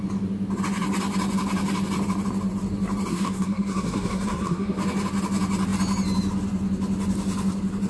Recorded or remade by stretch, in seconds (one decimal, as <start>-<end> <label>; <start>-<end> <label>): 0.0-3.1 recorded; 3.1-4.8 remade; 4.8-7.9 recorded